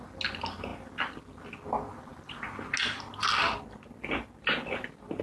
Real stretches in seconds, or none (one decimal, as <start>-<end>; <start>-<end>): 0.0-5.2